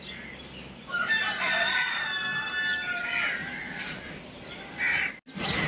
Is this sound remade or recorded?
recorded